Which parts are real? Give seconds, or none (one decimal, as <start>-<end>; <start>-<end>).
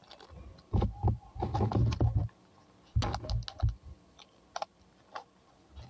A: 0.0-5.9